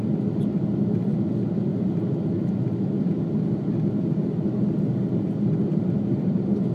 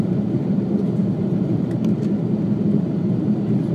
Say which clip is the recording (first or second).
first